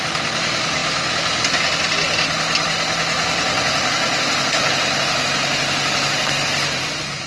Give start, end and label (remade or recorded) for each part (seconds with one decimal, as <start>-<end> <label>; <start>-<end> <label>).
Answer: 0.0-7.3 recorded